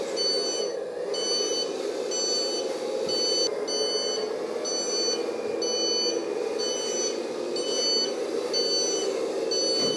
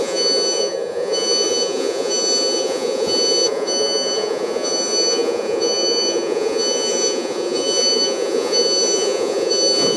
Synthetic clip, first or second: second